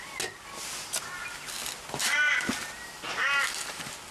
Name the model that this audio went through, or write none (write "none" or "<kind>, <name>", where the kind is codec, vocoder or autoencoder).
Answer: none